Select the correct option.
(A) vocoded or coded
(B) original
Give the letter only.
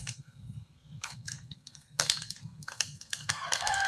A